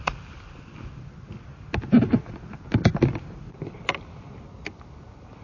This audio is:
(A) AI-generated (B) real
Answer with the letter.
B